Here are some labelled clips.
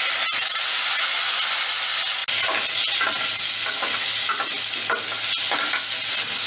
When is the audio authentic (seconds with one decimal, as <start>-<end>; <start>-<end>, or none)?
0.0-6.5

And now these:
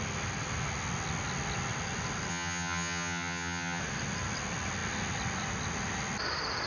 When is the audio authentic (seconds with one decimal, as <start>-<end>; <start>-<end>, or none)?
0.0-2.3; 3.8-6.7

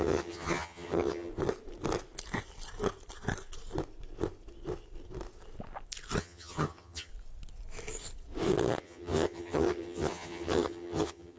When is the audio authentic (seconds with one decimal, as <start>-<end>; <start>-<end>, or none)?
1.3-6.2; 7.1-8.8

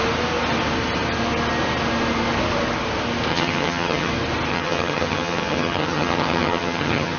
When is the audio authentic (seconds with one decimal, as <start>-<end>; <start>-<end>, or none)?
0.0-3.3; 4.1-4.5

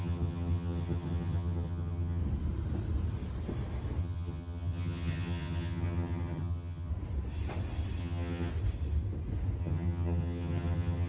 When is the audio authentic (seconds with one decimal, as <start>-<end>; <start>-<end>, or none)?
2.2-4.0; 6.9-8.0; 8.5-9.6